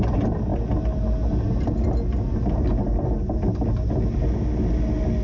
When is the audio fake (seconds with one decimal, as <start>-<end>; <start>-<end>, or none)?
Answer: none